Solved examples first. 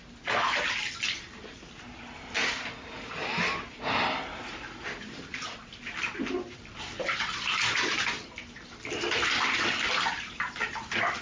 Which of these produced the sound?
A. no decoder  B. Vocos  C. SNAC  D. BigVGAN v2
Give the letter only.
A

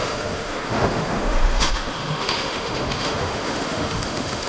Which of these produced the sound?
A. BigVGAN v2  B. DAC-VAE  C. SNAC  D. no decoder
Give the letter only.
B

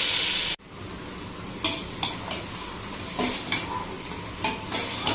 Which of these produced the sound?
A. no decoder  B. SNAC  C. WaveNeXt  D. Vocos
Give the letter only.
A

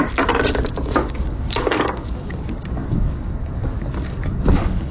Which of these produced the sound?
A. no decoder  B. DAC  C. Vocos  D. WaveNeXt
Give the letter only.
B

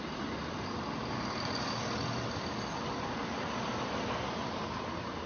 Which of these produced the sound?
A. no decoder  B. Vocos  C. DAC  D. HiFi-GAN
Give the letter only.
A